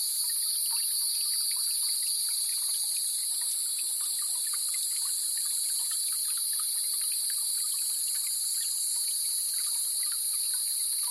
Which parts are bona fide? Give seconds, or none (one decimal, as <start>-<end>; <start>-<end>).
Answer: 0.0-3.9; 6.0-11.1

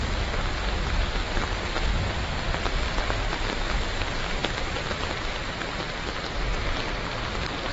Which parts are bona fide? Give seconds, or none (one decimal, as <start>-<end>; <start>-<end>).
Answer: 0.0-7.7

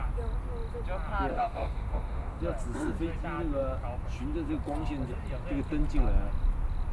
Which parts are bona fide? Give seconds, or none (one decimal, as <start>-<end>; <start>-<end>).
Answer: 0.0-1.3; 2.4-6.9